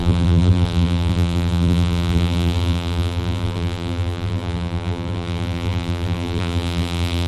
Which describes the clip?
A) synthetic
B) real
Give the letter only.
A